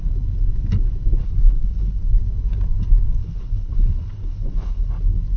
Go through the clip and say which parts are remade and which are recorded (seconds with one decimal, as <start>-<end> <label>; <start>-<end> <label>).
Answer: 0.0-1.2 recorded; 1.2-2.0 remade; 2.0-3.2 recorded; 3.2-4.9 remade; 4.9-5.4 recorded